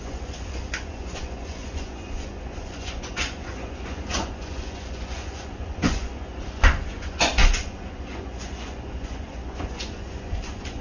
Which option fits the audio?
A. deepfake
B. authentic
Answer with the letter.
A